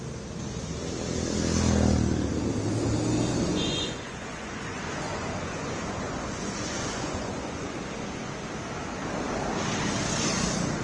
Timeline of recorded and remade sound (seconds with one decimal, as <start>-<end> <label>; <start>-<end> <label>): 0.0-3.5 recorded; 3.5-8.3 remade; 8.3-10.8 recorded